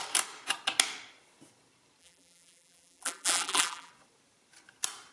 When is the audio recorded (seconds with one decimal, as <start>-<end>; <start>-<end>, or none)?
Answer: 0.0-2.0; 3.9-5.1